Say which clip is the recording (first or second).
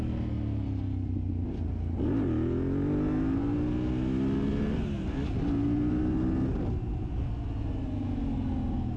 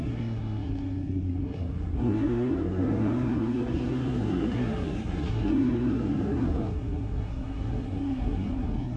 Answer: first